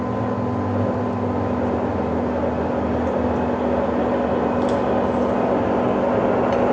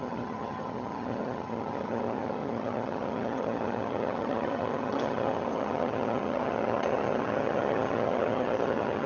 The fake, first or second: second